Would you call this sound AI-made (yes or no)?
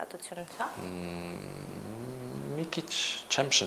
no